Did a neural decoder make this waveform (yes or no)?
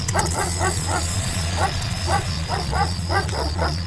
yes